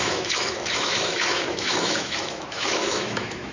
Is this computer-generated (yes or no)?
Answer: yes